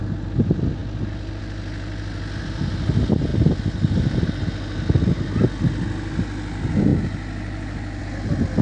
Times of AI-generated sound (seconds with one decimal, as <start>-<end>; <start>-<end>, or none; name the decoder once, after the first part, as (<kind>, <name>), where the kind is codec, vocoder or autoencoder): none